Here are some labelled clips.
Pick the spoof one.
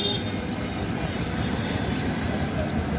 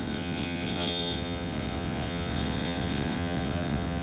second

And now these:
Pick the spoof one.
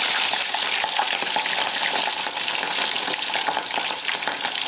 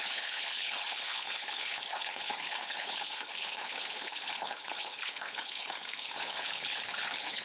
second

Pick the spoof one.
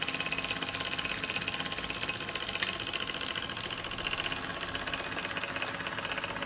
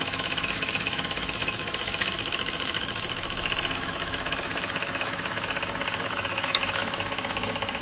second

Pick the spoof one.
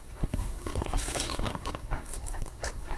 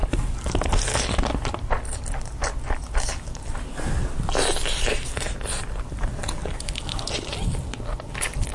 first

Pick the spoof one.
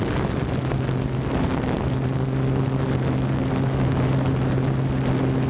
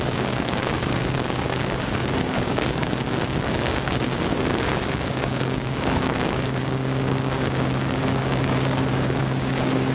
second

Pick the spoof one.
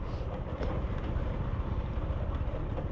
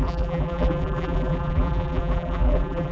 second